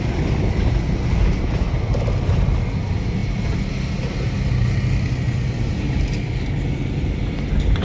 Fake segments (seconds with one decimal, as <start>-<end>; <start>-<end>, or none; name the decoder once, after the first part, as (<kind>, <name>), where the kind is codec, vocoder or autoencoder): none